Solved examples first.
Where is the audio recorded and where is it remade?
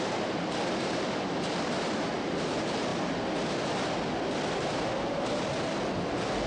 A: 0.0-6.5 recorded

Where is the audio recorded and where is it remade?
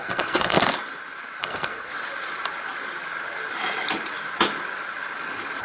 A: 0.0-0.7 remade; 0.7-1.4 recorded; 1.4-1.9 remade; 1.9-5.6 recorded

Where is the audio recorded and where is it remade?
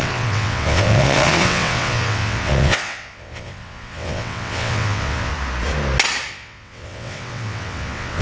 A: 0.0-5.3 remade; 5.3-6.3 recorded; 6.3-8.2 remade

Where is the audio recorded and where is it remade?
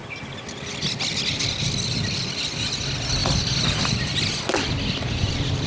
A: 0.0-5.7 recorded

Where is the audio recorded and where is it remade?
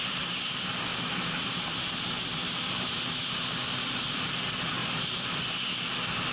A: 0.0-6.3 recorded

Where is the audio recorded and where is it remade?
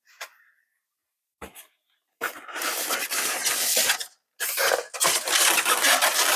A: 0.0-6.4 recorded